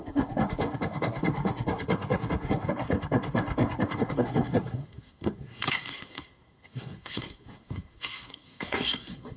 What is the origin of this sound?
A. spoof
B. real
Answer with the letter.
A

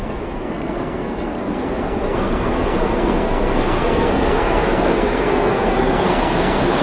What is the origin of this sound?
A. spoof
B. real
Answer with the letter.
A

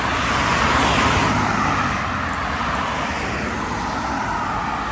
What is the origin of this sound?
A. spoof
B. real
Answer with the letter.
B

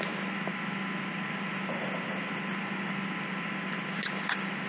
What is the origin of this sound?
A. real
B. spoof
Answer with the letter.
A